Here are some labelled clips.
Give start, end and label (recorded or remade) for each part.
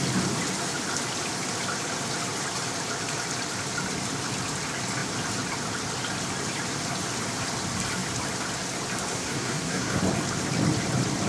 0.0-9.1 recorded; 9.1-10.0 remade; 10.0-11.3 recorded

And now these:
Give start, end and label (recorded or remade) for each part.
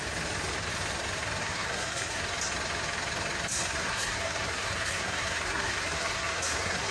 0.0-1.4 recorded; 1.4-2.2 remade; 2.2-3.5 recorded; 3.5-6.9 remade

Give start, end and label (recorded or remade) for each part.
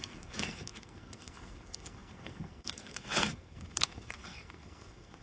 0.0-5.2 remade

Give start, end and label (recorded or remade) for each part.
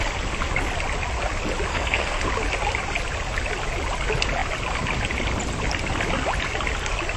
0.0-1.7 recorded; 1.7-2.2 remade; 2.2-7.2 recorded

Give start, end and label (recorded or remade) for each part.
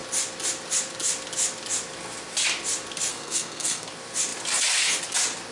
0.0-3.1 recorded; 3.1-3.9 remade; 3.9-5.5 recorded